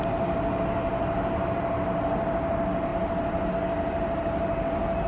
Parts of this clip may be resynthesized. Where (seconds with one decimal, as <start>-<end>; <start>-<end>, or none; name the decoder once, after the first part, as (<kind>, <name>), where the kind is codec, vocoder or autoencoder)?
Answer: 0.9-1.6 (vocoder, BigVGAN v2); 2.9-3.5